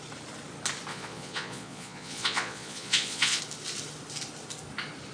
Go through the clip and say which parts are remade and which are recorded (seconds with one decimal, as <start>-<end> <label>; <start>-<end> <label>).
0.0-0.9 recorded; 0.9-3.4 remade; 3.4-5.1 recorded